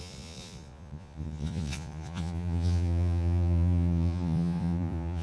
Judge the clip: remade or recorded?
remade